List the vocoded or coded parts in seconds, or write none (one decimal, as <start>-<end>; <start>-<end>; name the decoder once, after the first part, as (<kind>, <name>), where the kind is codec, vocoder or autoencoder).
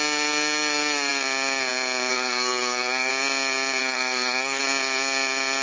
2.1-3.1 (codec, SNAC); 3.8-4.6